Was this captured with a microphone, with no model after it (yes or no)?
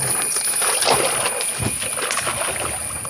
yes